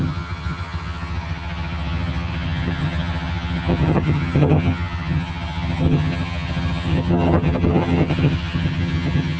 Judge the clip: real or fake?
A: fake